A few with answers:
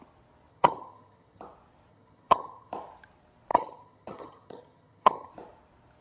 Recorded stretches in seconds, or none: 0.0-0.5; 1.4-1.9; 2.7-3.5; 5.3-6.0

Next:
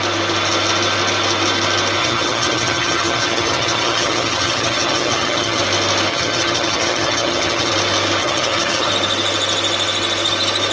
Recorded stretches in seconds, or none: 0.0-2.0; 5.6-6.1; 7.7-8.2; 8.9-10.7

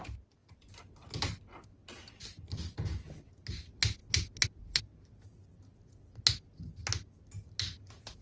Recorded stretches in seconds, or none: 0.0-8.2

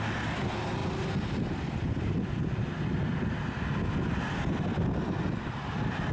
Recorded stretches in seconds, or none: 0.0-6.1

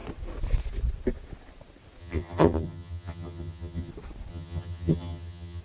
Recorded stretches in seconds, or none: 0.0-2.0; 3.9-4.3

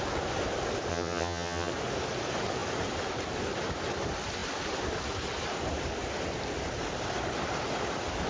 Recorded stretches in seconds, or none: 0.0-0.9; 1.7-8.3

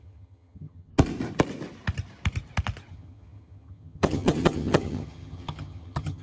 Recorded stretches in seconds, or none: 0.9-2.9